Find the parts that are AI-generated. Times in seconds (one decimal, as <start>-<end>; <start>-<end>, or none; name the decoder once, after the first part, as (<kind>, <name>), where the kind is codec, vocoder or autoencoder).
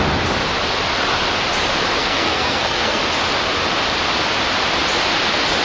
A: 2.0-3.0 (codec, SNAC)